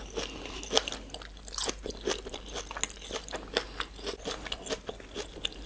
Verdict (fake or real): real